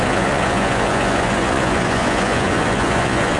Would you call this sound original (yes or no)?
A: no